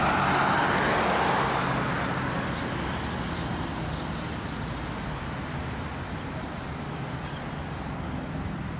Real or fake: real